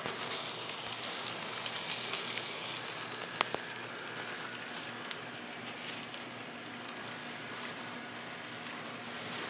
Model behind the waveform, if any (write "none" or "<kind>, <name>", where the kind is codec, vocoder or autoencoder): none